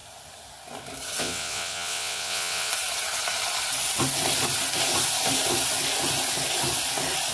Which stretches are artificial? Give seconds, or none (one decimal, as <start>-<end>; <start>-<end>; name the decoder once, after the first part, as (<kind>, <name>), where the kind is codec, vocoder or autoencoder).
1.2-2.7 (vocoder, WaveNeXt)